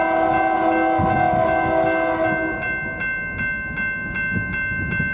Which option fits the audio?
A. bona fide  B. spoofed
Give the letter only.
A